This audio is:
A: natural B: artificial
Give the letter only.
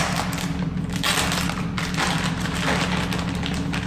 A